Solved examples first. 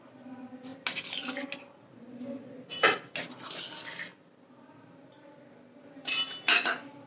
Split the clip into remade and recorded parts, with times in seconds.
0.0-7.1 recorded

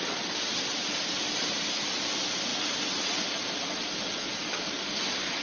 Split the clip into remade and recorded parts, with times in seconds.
0.0-5.4 recorded